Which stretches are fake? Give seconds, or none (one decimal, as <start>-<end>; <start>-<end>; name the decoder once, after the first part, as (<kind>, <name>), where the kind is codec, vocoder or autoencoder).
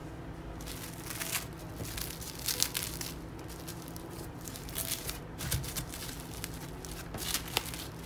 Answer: 3.7-5.2 (vocoder, BigVGAN v2)